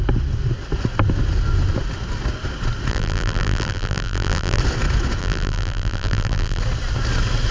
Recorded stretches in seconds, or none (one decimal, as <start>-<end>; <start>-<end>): 0.0-2.9; 4.6-5.2; 6.6-7.5